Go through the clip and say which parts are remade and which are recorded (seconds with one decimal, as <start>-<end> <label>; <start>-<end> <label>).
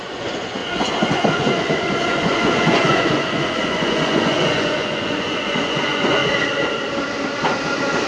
0.0-6.2 remade; 6.2-8.1 recorded